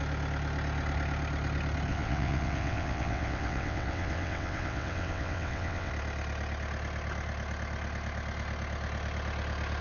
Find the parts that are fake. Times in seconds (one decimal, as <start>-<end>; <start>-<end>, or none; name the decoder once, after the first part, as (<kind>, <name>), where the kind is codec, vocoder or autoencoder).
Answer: 1.9-5.9 (vocoder, WaveNeXt)